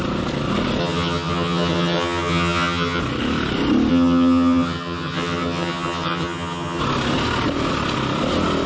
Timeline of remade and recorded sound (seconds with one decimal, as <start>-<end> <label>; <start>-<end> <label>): 0.0-0.8 recorded; 0.8-3.0 remade; 3.0-3.9 recorded; 3.9-6.8 remade; 6.8-8.7 recorded

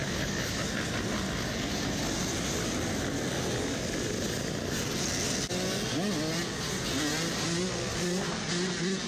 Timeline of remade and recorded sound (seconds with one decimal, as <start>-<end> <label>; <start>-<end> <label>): 0.0-0.6 remade; 0.6-9.1 recorded

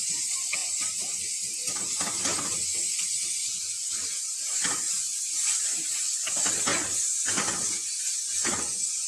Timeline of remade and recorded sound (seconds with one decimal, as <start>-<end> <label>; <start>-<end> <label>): 0.0-5.1 recorded; 5.1-6.0 remade; 6.0-9.1 recorded

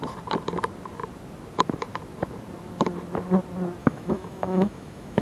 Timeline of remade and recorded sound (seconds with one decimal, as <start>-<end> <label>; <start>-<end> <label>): 0.0-3.8 recorded; 3.8-5.2 remade

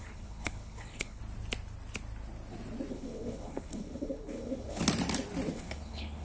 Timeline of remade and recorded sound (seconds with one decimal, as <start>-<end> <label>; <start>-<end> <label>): 0.0-1.2 remade; 1.2-2.9 recorded; 2.9-4.8 remade; 4.8-5.5 recorded; 5.5-6.2 remade

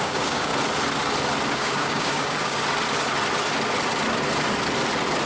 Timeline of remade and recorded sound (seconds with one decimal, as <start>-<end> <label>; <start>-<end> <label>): 0.0-0.5 remade; 0.5-1.5 recorded; 1.5-2.6 remade; 2.6-5.3 recorded

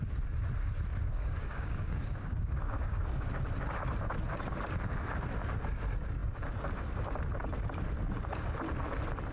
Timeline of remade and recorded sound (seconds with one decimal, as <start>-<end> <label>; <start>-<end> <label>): 0.0-0.9 recorded; 0.9-3.3 remade; 3.3-9.3 recorded